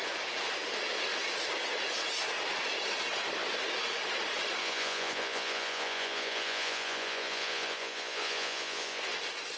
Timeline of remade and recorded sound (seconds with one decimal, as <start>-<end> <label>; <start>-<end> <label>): 0.0-4.6 recorded; 4.6-9.0 remade; 9.0-9.6 recorded